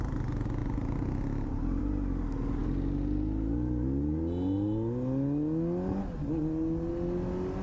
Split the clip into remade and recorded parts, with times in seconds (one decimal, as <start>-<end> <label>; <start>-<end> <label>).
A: 0.0-7.6 recorded